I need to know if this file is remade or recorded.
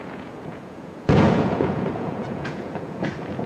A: remade